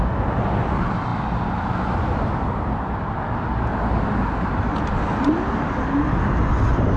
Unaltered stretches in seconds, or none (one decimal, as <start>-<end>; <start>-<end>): 0.0-7.0